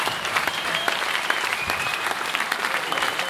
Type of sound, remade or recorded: remade